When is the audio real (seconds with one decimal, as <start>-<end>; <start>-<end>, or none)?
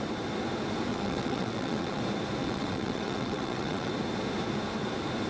0.0-0.9; 2.0-2.4; 3.9-5.3